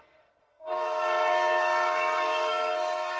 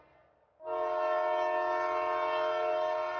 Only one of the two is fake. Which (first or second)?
first